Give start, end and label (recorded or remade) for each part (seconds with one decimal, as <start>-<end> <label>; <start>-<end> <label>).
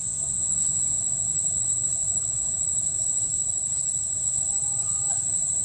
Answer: 0.0-1.0 remade; 1.0-5.6 recorded